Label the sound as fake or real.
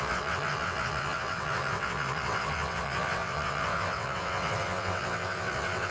fake